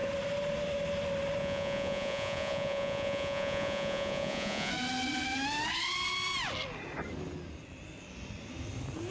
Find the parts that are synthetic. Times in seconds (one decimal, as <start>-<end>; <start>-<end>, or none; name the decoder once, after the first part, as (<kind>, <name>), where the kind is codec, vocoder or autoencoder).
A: 1.4-4.7 (vocoder, Vocos)